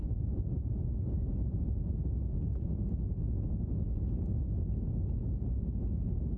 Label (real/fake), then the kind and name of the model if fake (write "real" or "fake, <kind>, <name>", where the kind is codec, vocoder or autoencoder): fake, vocoder, Vocos